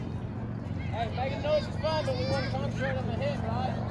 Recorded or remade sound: recorded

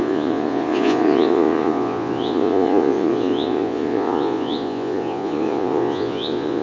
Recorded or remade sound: remade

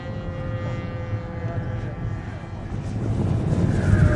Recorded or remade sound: recorded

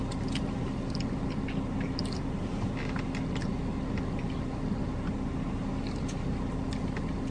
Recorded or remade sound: recorded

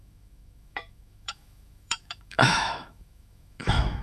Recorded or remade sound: remade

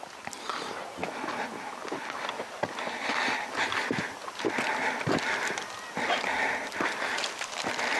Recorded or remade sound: recorded